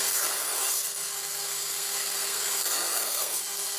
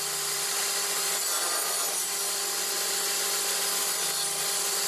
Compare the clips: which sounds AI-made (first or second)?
first